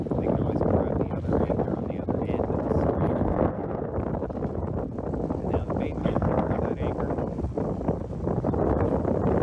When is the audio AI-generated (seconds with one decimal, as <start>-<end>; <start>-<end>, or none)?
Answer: 3.1-3.9; 6.0-6.6